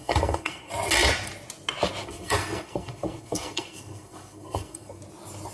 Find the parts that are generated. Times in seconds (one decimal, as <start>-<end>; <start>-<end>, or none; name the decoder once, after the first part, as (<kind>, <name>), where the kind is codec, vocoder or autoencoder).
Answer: 0.0-0.7 (codec, SNAC); 2.0-5.0